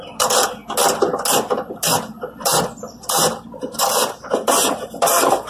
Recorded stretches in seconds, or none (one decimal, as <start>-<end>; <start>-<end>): 0.6-1.6